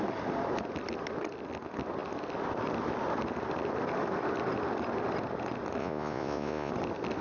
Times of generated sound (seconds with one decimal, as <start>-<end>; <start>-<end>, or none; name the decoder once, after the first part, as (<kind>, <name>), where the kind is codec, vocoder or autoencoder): 5.8-6.7 (vocoder, Vocos)